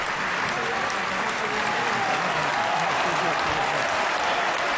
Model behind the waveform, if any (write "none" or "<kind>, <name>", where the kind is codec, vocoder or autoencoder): none